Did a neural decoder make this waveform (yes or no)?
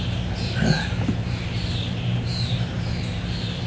no